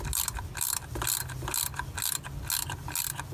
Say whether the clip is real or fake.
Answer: real